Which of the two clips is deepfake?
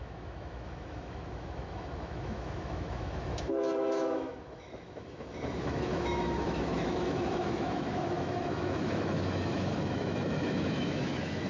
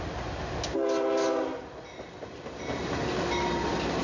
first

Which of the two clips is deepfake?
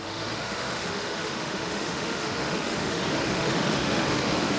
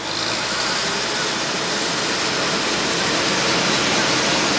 first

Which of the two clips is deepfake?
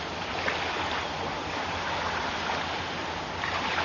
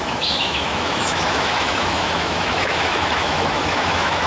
second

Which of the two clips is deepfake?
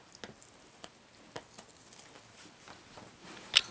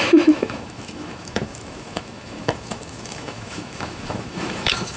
second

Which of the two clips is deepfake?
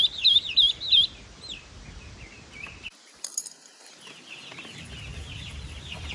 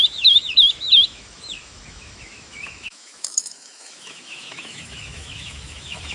second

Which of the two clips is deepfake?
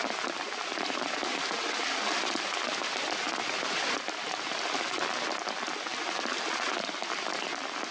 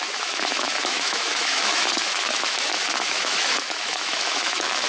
second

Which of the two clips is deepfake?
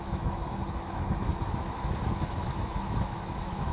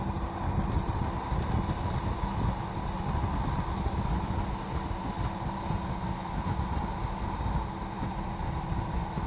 first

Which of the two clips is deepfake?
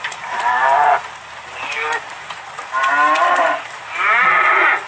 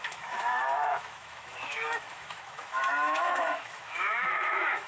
second